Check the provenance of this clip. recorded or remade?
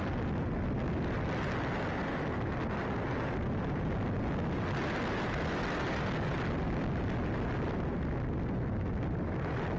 recorded